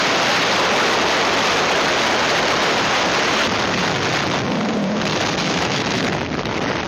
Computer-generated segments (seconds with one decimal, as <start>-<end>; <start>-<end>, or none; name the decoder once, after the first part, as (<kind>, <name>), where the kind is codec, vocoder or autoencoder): 5.4-6.0 (autoencoder, DAC-VAE)